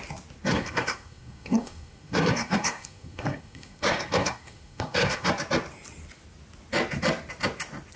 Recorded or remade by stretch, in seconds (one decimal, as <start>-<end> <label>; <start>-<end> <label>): 0.0-0.5 recorded; 0.5-5.3 remade; 5.3-8.0 recorded